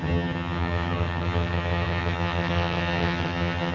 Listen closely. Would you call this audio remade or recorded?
remade